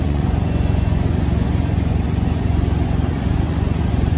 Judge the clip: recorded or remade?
remade